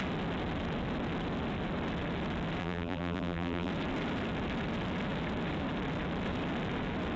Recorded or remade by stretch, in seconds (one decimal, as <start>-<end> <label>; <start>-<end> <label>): 0.0-2.6 recorded; 2.6-3.7 remade; 3.7-7.2 recorded